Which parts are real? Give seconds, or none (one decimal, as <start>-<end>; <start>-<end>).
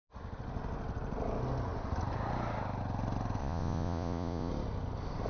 0.0-3.4; 4.5-5.3